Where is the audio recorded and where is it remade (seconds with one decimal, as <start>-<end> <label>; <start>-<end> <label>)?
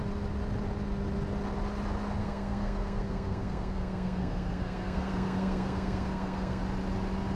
0.0-2.2 recorded; 2.2-6.6 remade; 6.6-7.4 recorded